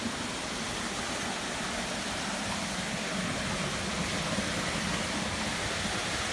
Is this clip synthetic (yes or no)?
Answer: no